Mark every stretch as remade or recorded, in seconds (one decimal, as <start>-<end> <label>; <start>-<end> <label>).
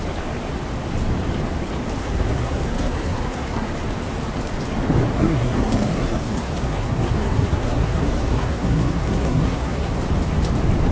0.0-2.0 recorded; 2.0-3.7 remade; 3.7-5.1 recorded; 5.1-10.0 remade; 10.0-10.9 recorded